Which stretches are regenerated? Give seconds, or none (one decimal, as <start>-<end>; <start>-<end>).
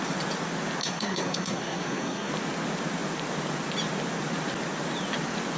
0.8-2.3